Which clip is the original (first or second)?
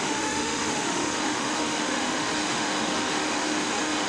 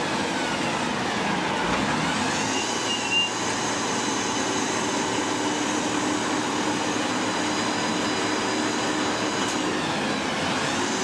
second